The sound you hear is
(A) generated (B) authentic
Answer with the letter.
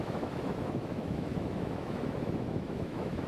A